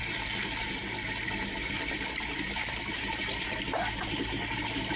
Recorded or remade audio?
remade